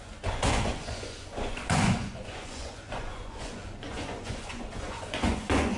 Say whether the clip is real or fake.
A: fake